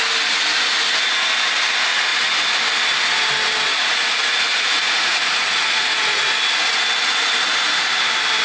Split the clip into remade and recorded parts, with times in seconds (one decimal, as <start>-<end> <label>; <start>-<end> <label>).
0.0-3.7 recorded; 3.7-6.2 remade; 6.2-8.4 recorded